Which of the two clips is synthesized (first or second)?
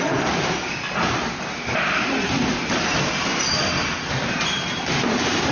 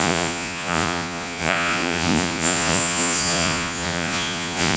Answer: second